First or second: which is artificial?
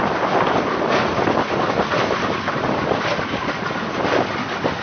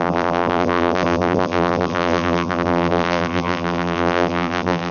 second